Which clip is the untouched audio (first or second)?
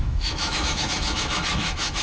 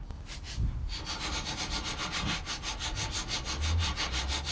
second